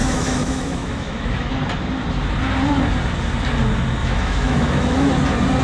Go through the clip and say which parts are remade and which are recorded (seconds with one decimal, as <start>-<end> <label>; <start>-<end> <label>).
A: 0.0-1.5 remade; 1.5-4.0 recorded; 4.0-5.1 remade; 5.1-5.6 recorded